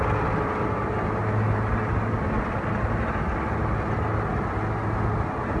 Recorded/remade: recorded